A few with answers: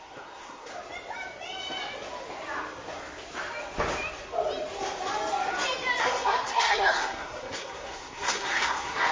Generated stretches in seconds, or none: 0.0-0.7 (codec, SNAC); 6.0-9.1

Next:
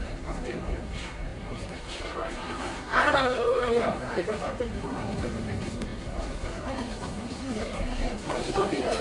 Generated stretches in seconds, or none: 0.0-9.0 (codec, SNAC)